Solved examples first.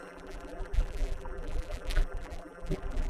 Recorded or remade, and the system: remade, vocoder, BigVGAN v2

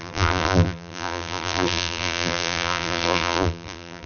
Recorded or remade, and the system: remade, vocoder, BigVGAN v2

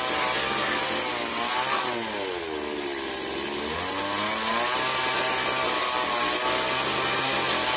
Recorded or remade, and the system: recorded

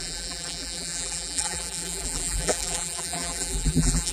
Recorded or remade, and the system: remade, vocoder, BigVGAN v2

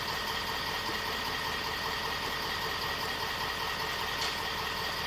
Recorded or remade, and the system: recorded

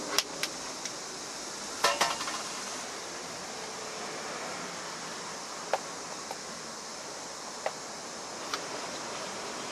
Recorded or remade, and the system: recorded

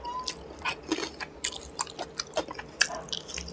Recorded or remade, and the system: recorded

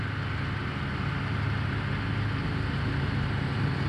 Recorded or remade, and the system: recorded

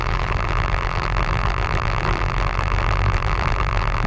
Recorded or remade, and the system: remade, vocoder, BigVGAN v2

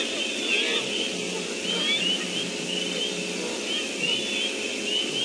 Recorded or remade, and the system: recorded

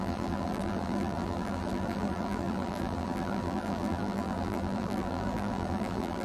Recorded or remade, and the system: remade, vocoder, BigVGAN v2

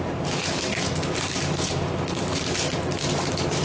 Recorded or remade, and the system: remade, vocoder, BigVGAN v2